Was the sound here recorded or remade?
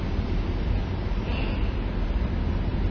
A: recorded